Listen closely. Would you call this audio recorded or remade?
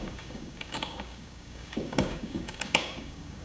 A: remade